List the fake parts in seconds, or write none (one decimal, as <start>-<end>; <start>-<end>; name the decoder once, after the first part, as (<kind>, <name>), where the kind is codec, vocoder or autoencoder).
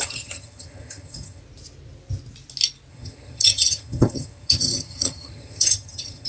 0.0-1.4 (vocoder, HiFi-GAN); 2.9-6.3